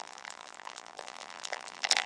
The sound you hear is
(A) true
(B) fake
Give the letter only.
B